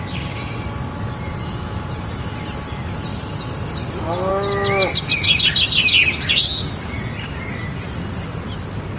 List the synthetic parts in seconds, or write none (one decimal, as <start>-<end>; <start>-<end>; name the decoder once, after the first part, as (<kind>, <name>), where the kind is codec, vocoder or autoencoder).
3.1-4.3 (vocoder, BigVGAN v2)